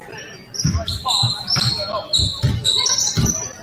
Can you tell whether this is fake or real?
fake